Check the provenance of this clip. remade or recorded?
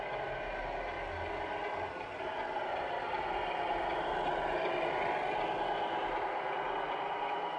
recorded